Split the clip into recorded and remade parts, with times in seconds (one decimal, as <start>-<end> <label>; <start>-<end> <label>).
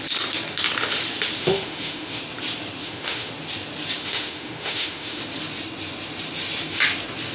0.0-1.4 recorded; 1.4-2.2 remade; 2.2-2.8 recorded; 2.8-3.3 remade; 3.3-4.0 recorded; 4.0-5.2 remade; 5.2-7.3 recorded